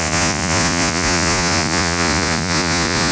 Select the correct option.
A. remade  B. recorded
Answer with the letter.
A